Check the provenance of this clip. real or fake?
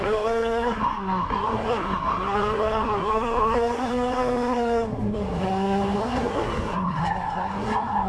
fake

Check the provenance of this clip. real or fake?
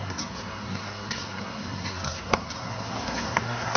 fake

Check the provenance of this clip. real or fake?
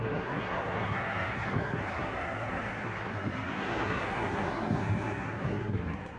fake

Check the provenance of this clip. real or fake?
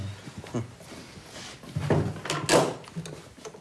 real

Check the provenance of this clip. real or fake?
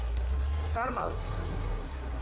fake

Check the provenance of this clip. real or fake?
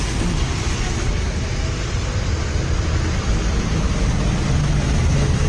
real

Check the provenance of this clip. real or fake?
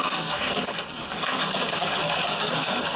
fake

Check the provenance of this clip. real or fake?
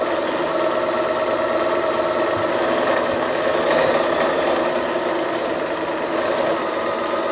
real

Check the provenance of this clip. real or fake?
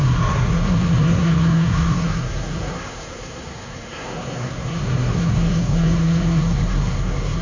fake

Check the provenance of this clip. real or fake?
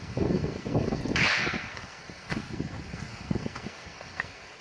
fake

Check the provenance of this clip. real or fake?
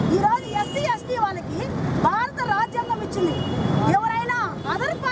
real